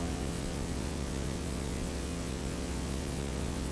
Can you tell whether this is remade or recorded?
remade